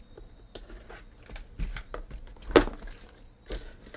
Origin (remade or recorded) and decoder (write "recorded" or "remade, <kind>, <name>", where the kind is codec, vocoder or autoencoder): recorded